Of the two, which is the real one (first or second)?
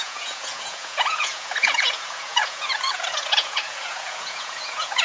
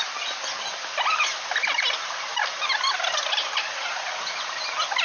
second